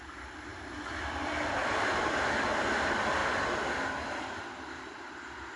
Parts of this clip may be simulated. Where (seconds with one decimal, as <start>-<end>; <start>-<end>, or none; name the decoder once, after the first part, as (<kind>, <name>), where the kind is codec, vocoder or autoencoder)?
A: none